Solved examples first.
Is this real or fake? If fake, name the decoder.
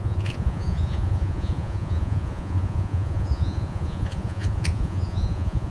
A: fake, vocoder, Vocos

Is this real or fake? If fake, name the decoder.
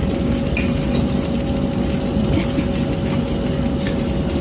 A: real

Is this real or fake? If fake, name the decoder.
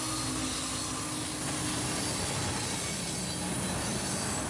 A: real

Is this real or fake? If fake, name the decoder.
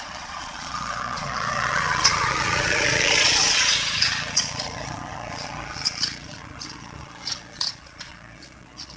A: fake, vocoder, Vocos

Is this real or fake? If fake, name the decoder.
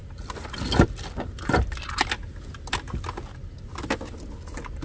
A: real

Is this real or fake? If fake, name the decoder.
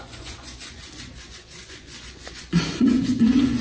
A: fake, vocoder, Vocos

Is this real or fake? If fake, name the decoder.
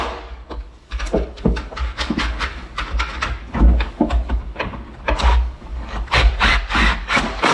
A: fake, codec, DAC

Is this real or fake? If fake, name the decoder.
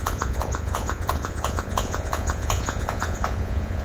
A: fake, vocoder, Vocos